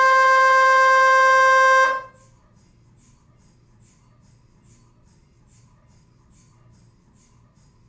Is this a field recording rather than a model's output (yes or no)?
yes